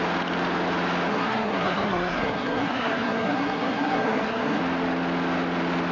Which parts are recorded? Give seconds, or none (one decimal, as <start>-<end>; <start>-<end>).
0.0-1.1; 4.6-5.9